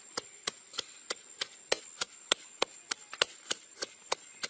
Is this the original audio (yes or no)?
yes